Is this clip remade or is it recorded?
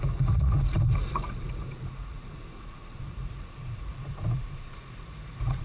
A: remade